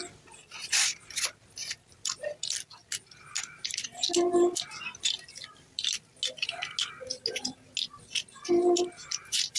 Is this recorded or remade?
recorded